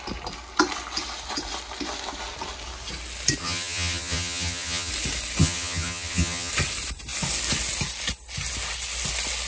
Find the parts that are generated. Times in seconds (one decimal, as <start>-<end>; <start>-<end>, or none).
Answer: 3.4-4.9; 5.4-6.5